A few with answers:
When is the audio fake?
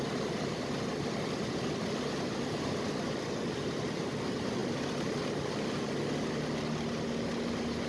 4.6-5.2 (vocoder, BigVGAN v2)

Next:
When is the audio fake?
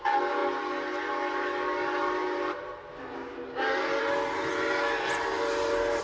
none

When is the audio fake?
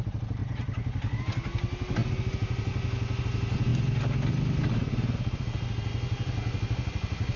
0.4-1.2 (vocoder, BigVGAN v2)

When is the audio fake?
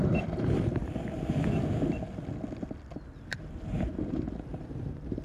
0.0-0.8 (vocoder, BigVGAN v2); 3.9-5.2